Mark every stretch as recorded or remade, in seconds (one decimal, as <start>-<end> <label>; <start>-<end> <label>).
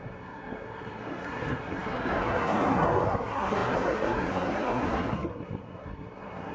0.0-6.5 remade